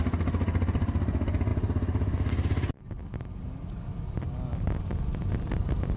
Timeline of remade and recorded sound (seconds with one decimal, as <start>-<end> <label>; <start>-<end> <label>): 0.0-6.0 recorded